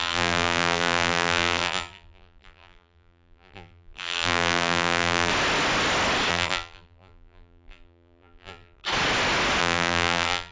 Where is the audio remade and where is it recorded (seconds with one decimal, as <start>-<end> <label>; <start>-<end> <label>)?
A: 0.0-5.3 remade; 5.3-6.3 recorded; 6.3-8.8 remade; 8.8-9.6 recorded; 9.6-10.5 remade